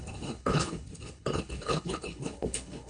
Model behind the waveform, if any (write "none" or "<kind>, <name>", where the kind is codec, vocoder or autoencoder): codec, HILCodec